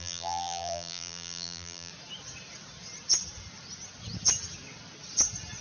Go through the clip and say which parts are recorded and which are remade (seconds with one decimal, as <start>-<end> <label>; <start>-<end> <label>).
0.0-1.9 remade; 1.9-5.6 recorded